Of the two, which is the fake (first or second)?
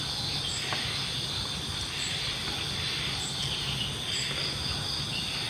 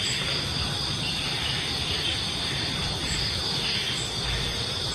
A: second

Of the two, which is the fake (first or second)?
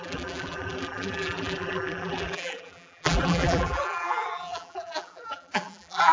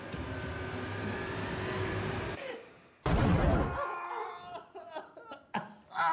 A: first